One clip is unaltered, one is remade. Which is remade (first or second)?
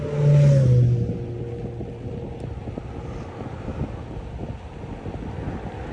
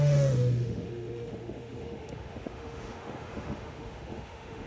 second